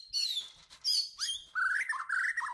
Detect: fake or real real